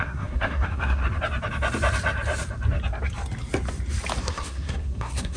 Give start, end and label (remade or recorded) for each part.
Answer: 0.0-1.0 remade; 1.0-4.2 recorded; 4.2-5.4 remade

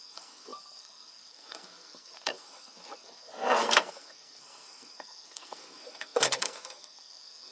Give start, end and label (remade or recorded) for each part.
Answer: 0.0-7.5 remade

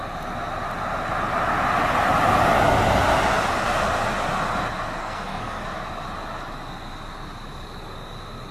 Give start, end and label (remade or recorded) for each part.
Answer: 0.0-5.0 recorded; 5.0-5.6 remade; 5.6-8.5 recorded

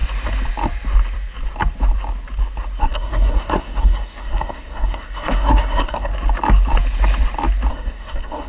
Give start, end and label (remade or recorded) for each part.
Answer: 0.0-2.8 recorded; 2.8-6.1 remade; 6.1-7.7 recorded; 7.7-8.5 remade

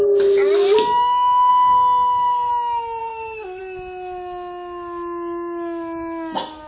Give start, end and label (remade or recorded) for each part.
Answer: 0.0-1.5 recorded; 1.5-2.5 remade; 2.5-3.0 recorded; 3.0-3.6 remade; 3.6-6.7 recorded